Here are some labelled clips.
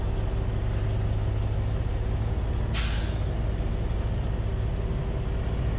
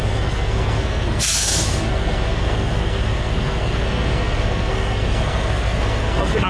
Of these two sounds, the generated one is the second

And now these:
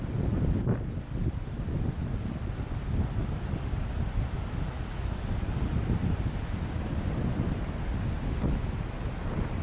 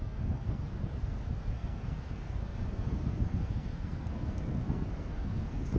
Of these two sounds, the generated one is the second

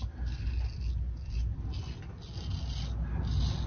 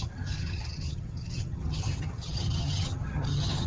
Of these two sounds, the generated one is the second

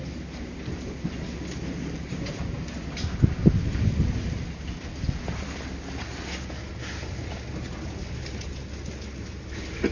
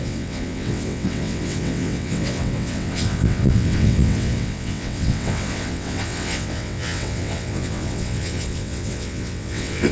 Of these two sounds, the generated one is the second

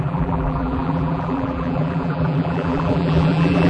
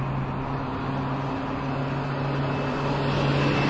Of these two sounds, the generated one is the first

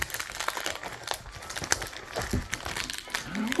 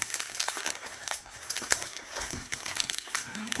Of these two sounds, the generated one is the second